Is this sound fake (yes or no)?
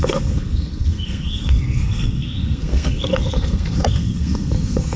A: yes